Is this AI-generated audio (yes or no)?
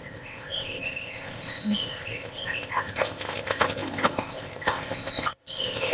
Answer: yes